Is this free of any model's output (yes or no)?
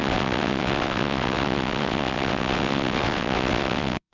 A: no